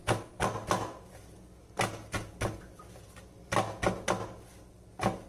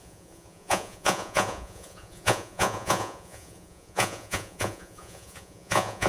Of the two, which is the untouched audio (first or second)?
first